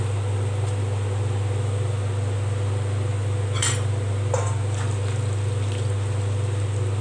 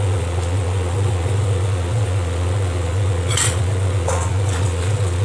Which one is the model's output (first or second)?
second